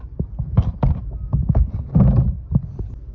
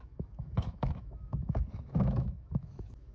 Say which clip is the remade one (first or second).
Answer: second